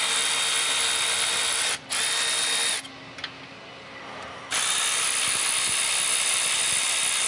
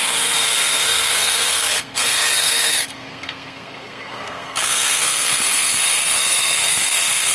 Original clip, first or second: first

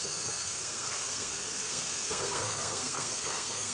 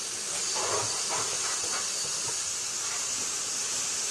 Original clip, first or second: second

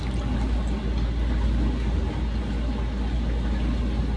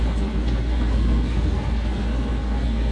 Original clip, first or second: first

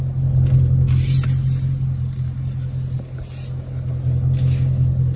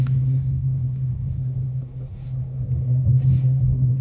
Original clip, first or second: first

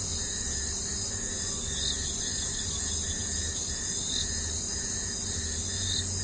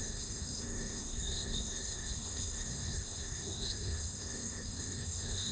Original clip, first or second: first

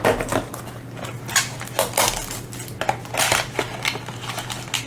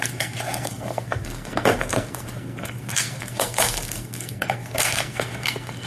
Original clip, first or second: first